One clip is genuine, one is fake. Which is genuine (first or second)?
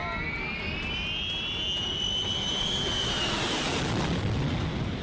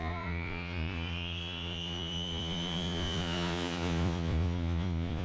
first